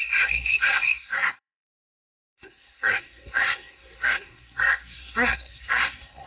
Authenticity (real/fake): fake